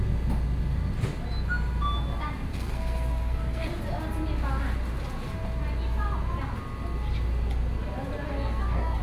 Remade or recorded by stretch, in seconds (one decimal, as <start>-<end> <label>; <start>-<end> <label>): 0.0-2.5 recorded; 2.5-3.7 remade; 3.7-8.3 recorded; 8.3-9.0 remade

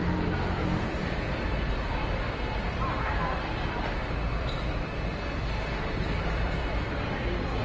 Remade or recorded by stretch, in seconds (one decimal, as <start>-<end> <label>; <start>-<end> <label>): 0.0-0.6 recorded; 0.6-7.6 remade

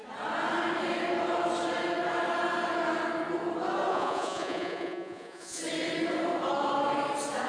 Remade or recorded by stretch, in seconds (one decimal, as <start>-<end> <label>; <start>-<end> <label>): 0.0-3.9 recorded; 3.9-5.6 remade; 5.6-7.5 recorded

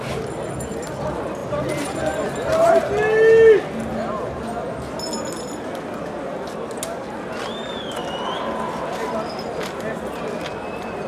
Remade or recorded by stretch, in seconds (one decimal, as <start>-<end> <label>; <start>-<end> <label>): 0.0-1.4 recorded; 1.4-2.9 remade; 2.9-11.1 recorded